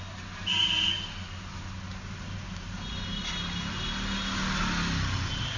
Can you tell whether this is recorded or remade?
recorded